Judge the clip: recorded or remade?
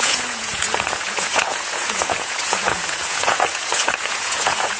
remade